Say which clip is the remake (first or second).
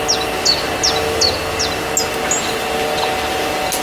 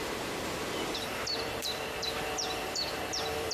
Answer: second